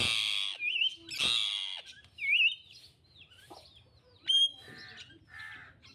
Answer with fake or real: real